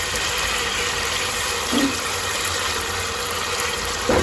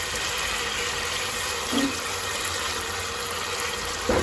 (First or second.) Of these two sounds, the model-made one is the first